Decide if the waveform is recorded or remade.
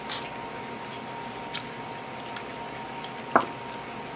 recorded